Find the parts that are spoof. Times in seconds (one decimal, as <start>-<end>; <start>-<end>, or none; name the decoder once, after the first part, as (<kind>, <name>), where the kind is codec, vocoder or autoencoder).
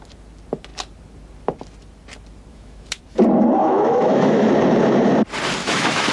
2.5-3.0 (autoencoder, DAC-VAE); 3.6-4.5; 5.6-6.1